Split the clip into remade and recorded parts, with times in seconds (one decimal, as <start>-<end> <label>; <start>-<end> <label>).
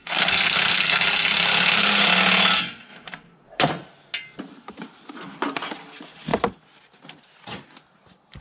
0.0-1.0 remade; 1.0-8.4 recorded